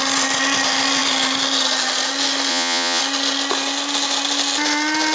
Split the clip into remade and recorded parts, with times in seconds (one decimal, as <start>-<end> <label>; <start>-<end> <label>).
0.0-2.5 recorded; 2.5-3.0 remade; 3.0-5.1 recorded